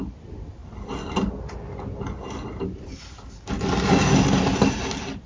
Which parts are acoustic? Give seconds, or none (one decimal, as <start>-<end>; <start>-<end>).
0.0-5.3